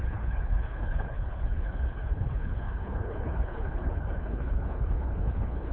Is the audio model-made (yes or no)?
yes